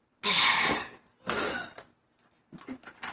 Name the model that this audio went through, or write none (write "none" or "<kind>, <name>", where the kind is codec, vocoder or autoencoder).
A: none